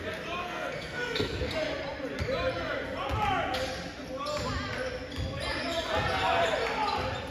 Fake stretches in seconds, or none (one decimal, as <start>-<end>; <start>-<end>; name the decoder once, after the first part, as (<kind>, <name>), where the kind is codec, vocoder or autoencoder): 0.4-1.5 (codec, SNAC)